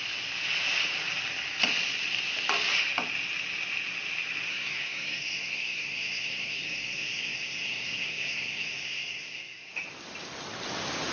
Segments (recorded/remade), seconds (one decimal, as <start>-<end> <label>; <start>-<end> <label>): 0.0-4.5 recorded; 4.5-9.7 remade; 9.7-11.1 recorded